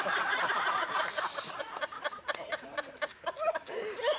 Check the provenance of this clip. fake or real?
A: real